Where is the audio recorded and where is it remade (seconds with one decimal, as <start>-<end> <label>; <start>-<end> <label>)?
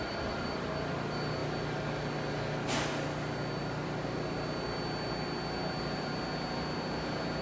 0.0-7.4 recorded